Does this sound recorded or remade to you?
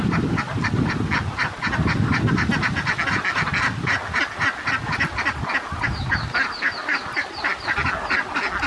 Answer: recorded